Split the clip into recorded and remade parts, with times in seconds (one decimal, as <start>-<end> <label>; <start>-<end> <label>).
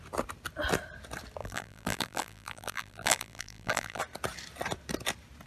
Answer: 0.0-1.4 recorded; 1.4-4.0 remade; 4.0-5.5 recorded